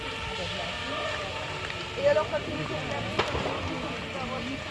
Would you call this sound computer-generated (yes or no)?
no